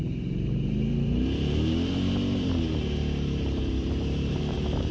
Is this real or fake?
fake